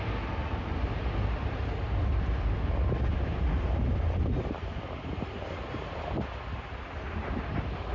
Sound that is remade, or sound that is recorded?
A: recorded